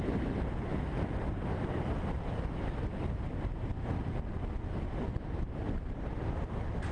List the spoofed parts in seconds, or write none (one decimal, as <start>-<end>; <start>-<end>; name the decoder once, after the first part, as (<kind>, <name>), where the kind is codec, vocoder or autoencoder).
none